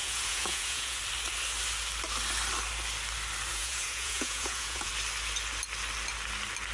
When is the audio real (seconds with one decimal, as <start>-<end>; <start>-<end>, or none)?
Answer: 1.0-3.5; 4.9-6.7